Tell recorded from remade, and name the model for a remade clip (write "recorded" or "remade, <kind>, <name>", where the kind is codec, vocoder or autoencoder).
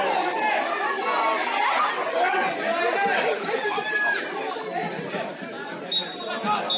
recorded